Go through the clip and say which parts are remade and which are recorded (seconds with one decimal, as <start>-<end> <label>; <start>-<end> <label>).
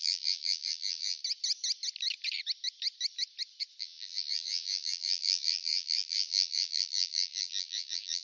0.0-1.2 remade; 1.2-3.8 recorded; 3.8-8.2 remade